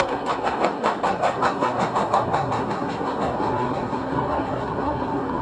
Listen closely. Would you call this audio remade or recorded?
remade